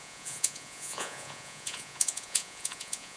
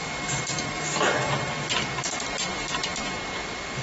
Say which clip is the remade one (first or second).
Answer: first